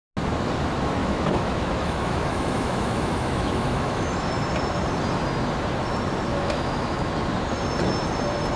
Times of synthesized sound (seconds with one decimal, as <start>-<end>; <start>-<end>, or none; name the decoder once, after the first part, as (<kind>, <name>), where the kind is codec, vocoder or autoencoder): 1.0-4.3 (autoencoder, DAC-VAE); 6.3-7.1